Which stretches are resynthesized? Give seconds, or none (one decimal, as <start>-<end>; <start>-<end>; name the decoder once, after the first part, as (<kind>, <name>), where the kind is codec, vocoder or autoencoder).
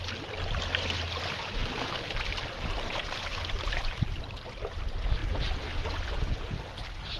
none